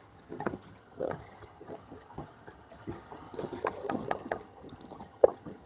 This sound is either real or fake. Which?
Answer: fake